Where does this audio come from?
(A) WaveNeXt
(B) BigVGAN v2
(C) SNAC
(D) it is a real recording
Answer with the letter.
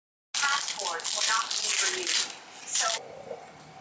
D